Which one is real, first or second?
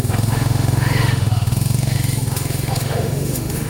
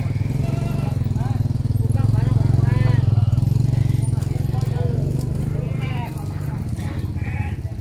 second